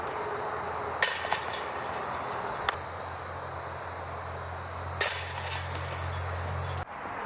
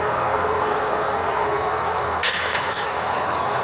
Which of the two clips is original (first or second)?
first